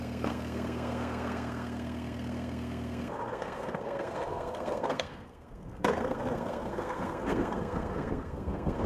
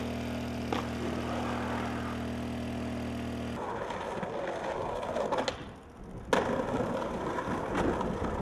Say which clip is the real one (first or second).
second